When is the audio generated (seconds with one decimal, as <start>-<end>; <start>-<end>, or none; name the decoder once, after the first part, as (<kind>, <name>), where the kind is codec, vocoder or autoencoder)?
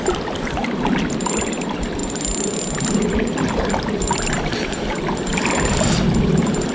0.0-6.7 (vocoder, BigVGAN v2)